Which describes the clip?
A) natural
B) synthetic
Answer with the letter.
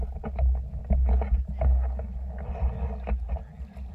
A